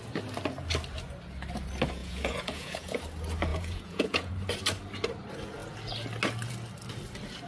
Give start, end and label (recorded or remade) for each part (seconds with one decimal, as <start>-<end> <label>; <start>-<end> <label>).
0.0-2.0 recorded; 2.0-3.0 remade; 3.0-3.5 recorded; 3.5-4.3 remade; 4.3-7.5 recorded